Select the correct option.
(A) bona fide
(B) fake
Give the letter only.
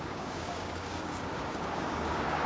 B